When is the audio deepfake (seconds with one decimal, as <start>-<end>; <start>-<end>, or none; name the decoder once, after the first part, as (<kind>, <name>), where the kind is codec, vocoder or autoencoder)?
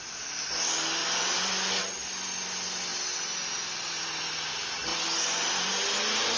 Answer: 1.0-1.8 (vocoder, BigVGAN v2); 4.9-5.7